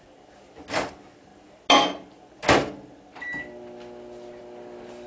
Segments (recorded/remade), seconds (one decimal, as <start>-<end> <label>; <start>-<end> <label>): 0.0-5.1 recorded